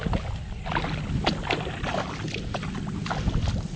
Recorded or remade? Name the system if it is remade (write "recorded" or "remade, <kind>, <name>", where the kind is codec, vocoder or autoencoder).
recorded